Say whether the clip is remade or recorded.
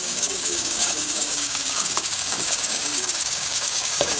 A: remade